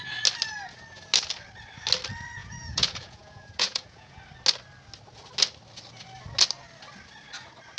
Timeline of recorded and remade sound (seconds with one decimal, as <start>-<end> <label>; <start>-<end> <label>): 0.0-2.4 recorded; 2.4-4.2 remade; 4.2-7.8 recorded